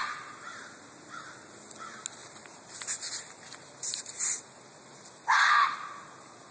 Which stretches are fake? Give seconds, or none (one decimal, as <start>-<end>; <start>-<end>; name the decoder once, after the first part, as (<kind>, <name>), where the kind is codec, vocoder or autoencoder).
none